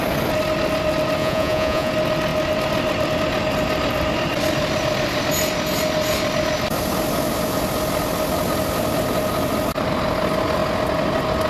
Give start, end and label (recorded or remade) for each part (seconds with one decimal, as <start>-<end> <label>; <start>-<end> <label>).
0.0-1.2 recorded; 1.2-1.9 remade; 1.9-11.5 recorded